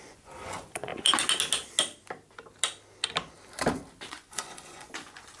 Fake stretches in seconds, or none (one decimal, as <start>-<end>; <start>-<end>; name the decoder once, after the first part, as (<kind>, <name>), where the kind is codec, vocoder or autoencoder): 0.0-0.9 (vocoder, Vocos); 4.1-5.4